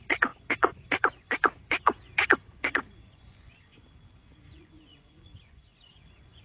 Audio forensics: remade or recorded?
remade